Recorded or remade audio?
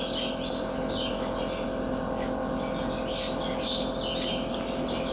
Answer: recorded